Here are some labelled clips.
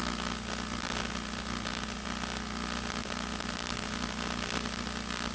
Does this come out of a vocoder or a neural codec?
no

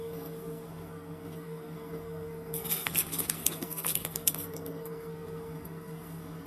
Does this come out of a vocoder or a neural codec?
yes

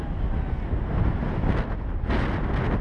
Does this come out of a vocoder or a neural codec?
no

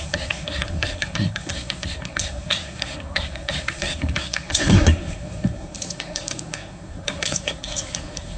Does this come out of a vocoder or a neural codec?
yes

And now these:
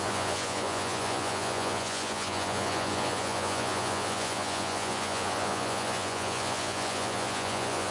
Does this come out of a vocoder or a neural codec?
yes